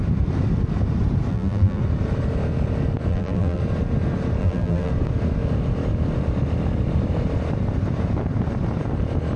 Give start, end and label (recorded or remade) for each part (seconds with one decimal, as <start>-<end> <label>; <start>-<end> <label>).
0.0-1.3 recorded; 1.3-1.8 remade; 1.8-3.1 recorded; 3.1-3.6 remade; 3.6-4.4 recorded; 4.4-4.9 remade; 4.9-9.4 recorded